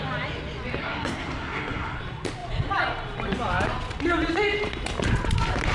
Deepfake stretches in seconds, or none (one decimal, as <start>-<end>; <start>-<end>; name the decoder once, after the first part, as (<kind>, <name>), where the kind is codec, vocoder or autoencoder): 0.8-2.0 (codec, SNAC)